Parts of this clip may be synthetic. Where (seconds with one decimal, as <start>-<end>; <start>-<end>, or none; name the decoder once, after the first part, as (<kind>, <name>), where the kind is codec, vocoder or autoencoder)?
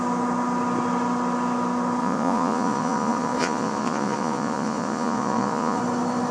2.0-5.8 (vocoder, Vocos)